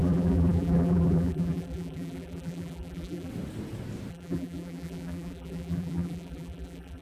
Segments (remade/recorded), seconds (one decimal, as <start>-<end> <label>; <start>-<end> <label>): 0.0-3.3 remade; 3.3-4.1 recorded; 4.1-7.0 remade